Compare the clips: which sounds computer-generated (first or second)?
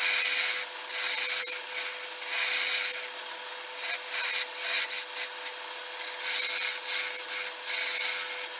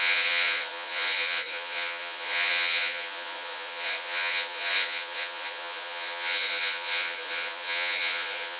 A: second